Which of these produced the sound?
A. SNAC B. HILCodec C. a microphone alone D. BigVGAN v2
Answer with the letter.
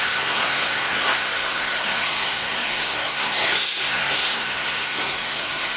A